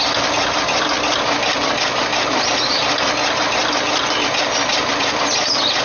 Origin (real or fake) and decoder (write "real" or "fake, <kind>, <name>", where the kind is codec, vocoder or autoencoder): real